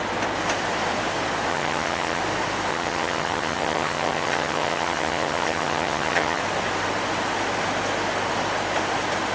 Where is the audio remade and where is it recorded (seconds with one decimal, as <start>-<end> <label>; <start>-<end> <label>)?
0.0-1.5 recorded; 1.5-2.2 remade; 2.2-2.7 recorded; 2.7-6.4 remade; 6.4-9.3 recorded